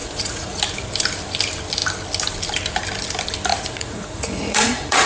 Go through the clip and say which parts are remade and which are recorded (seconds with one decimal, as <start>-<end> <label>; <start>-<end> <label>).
0.0-0.6 remade; 0.6-3.5 recorded; 3.5-5.1 remade